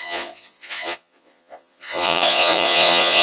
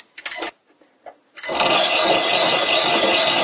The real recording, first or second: second